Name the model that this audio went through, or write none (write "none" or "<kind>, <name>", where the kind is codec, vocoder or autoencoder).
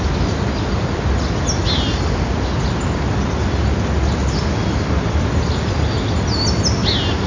none